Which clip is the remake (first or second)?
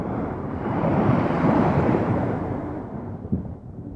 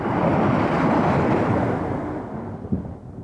first